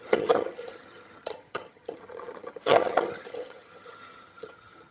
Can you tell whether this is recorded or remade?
remade